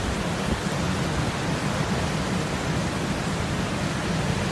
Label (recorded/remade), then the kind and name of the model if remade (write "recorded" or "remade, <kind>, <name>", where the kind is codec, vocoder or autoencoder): recorded